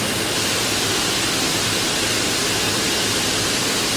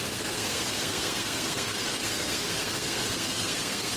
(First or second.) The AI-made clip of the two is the second